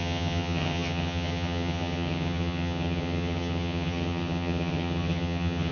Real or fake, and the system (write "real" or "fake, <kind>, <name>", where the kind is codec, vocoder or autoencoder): fake, vocoder, HiFi-GAN